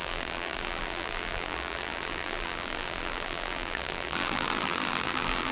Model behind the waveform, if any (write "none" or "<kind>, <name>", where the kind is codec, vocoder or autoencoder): vocoder, BigVGAN v2